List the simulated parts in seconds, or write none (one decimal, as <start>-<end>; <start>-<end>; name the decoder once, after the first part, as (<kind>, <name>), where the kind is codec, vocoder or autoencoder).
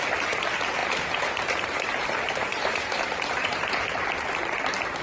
0.8-3.8 (vocoder, BigVGAN v2)